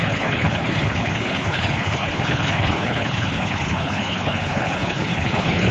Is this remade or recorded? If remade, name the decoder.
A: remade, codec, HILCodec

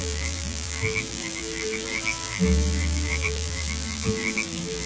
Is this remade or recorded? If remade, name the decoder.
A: remade, vocoder, BigVGAN v2